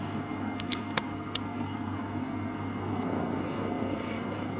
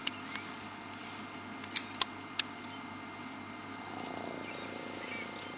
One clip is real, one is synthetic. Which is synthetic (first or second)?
first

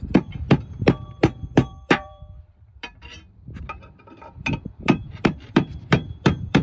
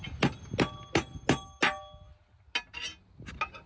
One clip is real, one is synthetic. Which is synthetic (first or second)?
first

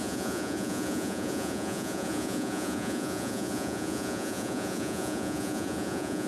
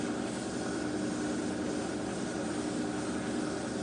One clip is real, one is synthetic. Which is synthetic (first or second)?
first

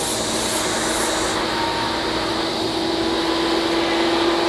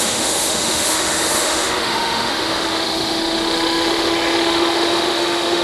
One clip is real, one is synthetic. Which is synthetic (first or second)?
second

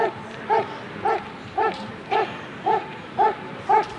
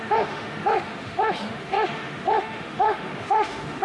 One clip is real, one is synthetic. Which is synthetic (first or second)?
second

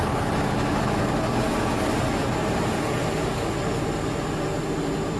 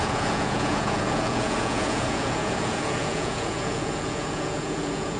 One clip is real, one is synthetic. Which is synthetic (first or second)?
second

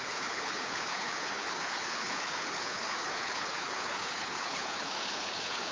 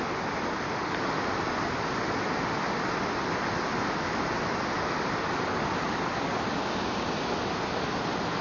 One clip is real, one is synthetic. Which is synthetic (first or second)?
first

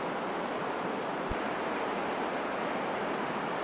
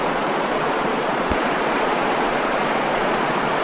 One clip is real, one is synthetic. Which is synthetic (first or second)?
second